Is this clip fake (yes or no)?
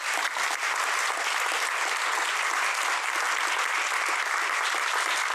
no